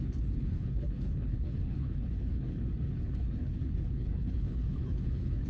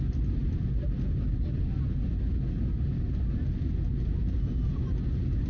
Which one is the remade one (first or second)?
first